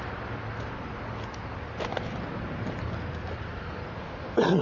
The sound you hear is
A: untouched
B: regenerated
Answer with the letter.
A